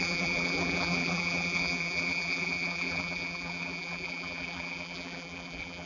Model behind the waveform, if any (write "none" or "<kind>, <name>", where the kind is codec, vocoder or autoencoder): vocoder, BigVGAN v2